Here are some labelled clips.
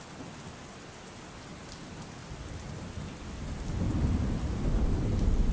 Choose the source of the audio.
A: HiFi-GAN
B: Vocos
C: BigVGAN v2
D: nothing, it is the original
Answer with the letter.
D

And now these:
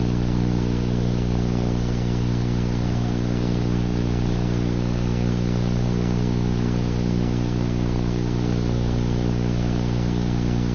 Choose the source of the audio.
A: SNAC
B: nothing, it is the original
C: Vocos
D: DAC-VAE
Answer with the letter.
A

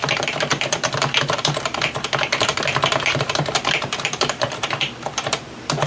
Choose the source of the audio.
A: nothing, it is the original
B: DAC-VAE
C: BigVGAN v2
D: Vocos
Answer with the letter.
C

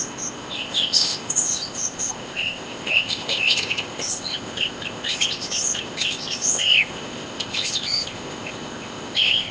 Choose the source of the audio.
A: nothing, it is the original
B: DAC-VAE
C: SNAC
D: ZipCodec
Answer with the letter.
D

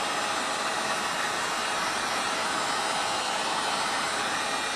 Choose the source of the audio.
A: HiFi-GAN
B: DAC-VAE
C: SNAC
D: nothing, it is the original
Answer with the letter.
D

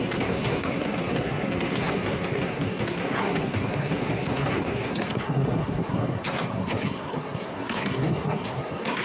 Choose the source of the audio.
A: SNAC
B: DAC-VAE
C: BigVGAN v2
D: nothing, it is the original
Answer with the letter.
A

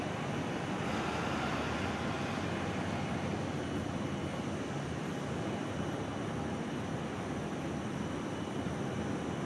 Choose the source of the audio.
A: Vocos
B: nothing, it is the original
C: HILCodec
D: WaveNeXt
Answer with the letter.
B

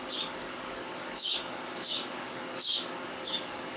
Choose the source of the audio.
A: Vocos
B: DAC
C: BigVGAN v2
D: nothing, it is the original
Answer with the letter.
B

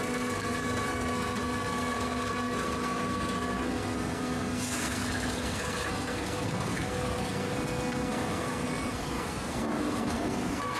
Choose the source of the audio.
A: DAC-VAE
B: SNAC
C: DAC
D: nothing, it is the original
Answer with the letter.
B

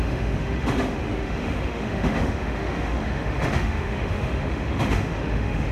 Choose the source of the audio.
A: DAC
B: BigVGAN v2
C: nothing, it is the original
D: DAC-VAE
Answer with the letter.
D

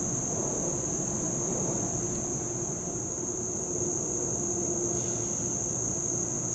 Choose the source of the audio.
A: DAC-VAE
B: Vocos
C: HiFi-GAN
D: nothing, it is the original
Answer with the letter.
D